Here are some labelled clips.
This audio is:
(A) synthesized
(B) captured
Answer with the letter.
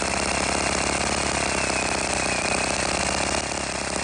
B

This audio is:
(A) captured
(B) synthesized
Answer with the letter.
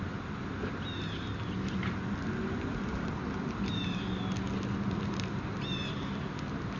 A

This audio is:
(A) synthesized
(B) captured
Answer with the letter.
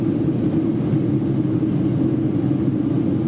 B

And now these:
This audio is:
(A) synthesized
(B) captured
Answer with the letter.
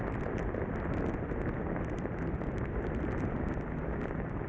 B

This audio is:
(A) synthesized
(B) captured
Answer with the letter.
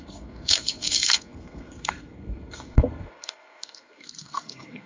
A